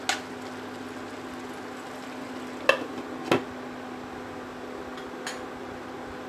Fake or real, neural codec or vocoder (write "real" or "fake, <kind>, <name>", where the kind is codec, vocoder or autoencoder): real